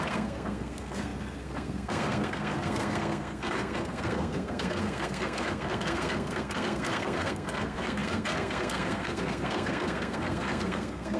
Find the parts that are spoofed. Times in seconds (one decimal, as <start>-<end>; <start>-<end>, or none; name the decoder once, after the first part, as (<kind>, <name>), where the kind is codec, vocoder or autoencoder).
0.0-11.2 (codec, SNAC)